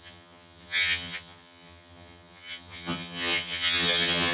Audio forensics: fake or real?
fake